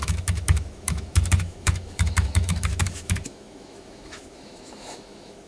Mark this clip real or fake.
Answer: fake